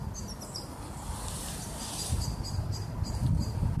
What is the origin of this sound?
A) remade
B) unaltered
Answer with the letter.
B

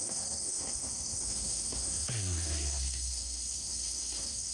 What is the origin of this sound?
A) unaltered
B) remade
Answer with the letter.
B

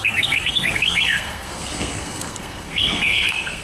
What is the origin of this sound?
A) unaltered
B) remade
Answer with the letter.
B